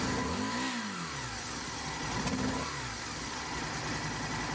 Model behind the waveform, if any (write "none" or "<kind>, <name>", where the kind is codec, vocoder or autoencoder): none